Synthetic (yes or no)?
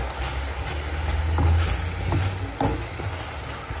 no